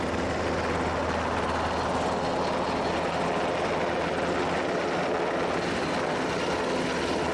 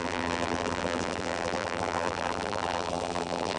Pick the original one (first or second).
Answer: first